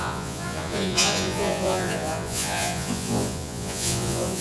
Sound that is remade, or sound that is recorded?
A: remade